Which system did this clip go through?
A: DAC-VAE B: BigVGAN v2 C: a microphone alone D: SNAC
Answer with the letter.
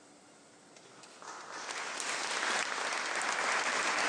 C